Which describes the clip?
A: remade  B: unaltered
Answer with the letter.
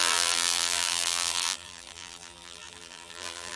A